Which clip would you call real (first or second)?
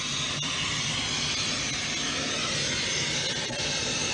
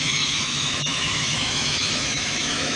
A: first